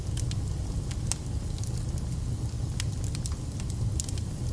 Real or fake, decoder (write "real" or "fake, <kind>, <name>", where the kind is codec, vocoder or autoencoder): real